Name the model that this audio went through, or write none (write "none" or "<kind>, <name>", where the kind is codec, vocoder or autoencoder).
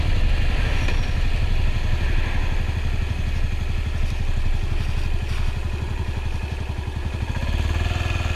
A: none